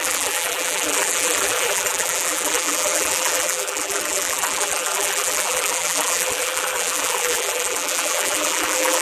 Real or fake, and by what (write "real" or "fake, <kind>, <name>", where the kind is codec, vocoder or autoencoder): fake, vocoder, BigVGAN v2